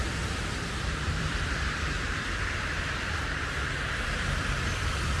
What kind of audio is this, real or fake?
fake